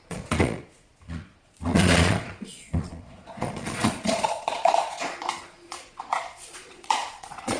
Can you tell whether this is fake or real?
fake